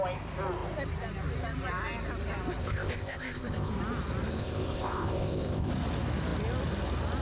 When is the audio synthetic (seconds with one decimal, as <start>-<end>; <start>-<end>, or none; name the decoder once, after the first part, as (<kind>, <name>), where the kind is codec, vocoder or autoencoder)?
2.6-3.7 (codec, ZipCodec); 4.3-5.7